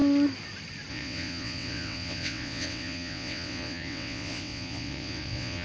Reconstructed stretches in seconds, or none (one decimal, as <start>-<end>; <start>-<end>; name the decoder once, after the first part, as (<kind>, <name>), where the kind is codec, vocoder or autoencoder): 0.9-5.6 (vocoder, WaveNeXt)